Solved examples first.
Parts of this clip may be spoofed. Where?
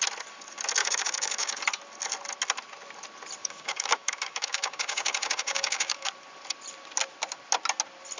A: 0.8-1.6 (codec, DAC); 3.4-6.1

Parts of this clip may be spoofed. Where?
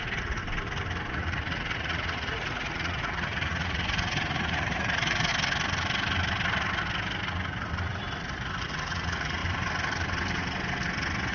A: 0.0-0.4 (vocoder, Vocos); 1.1-5.3; 8.6-9.4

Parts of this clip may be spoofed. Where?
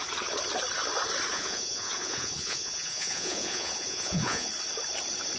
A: 1.3-4.5 (vocoder, Vocos)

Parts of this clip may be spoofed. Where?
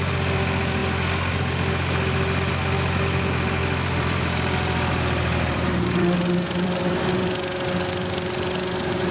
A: 3.6-7.1 (vocoder, BigVGAN v2)